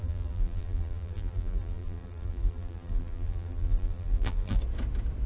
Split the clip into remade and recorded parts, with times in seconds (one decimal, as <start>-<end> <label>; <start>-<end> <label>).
0.0-4.6 remade; 4.6-5.3 recorded